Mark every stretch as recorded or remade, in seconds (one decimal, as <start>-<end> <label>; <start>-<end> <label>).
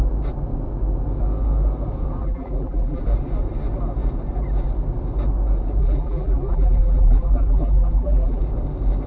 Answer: 0.0-2.2 recorded; 2.2-3.0 remade; 3.0-5.8 recorded; 5.8-8.4 remade; 8.4-9.1 recorded